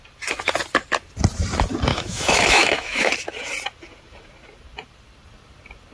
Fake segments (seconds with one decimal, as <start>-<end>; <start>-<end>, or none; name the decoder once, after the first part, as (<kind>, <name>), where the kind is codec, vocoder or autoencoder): 1.9-3.1 (autoencoder, DAC-VAE)